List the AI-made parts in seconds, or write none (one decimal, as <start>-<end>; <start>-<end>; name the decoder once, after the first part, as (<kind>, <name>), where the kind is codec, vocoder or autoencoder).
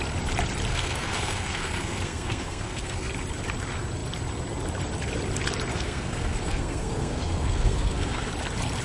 0.7-3.1 (codec, SNAC); 5.7-8.3